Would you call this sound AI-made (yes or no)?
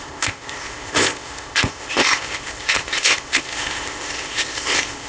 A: yes